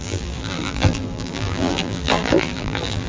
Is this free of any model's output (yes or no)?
no